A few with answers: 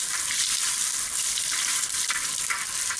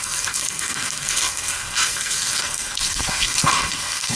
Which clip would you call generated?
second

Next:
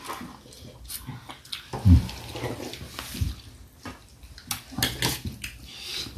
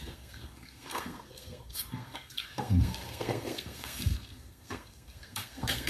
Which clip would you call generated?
second